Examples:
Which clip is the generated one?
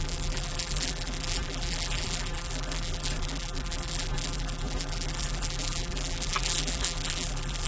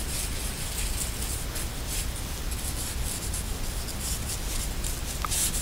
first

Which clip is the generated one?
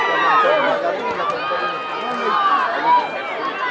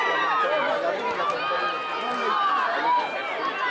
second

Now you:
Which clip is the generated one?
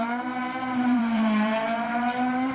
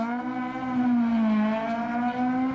first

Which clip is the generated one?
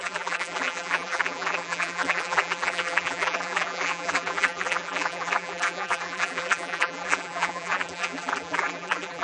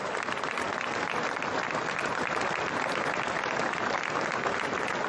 first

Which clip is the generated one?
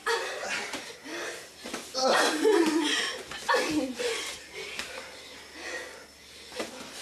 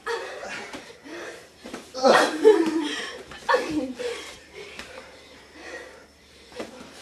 second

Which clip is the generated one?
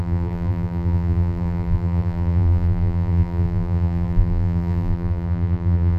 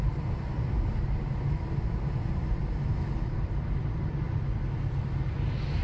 first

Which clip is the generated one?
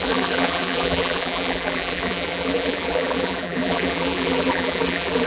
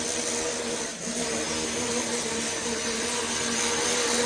first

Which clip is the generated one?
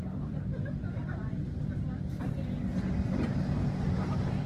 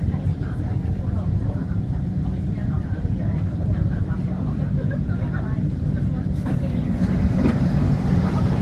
second